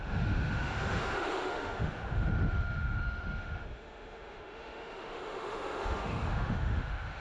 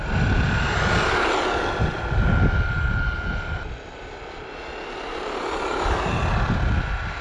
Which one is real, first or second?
second